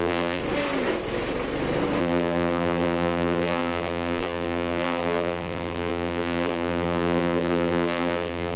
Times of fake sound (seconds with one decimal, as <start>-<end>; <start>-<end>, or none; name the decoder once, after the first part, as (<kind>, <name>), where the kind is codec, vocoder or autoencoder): 0.0-0.4 (vocoder, BigVGAN v2); 2.0-8.6